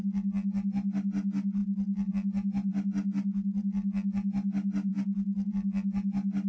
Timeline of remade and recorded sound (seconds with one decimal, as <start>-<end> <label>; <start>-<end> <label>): 0.0-6.5 recorded